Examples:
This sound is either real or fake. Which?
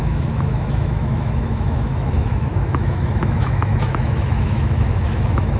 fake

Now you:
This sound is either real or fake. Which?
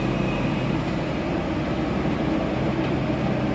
real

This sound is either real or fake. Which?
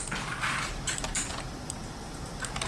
real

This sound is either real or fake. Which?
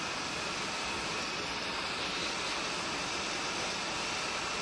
real